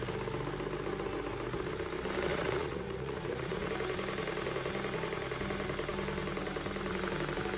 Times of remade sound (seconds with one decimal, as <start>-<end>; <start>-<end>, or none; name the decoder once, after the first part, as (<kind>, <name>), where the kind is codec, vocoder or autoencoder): 2.3-3.7 (vocoder, Vocos)